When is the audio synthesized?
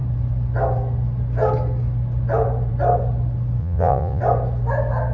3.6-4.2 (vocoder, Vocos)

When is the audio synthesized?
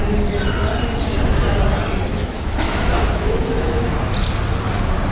2.1-3.9 (autoencoder, DAC-VAE)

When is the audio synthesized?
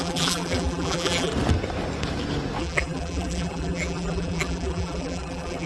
0.0-1.3 (vocoder, BigVGAN v2); 2.6-5.7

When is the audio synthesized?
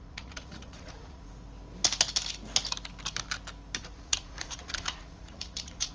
0.0-1.3 (vocoder, Vocos); 3.8-5.9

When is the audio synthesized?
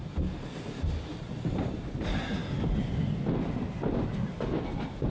1.1-2.0 (vocoder, BigVGAN v2)